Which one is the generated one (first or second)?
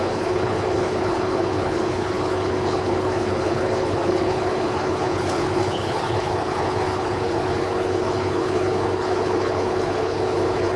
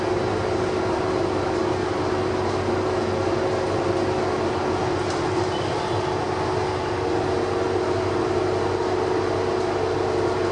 first